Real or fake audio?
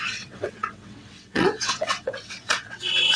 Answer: fake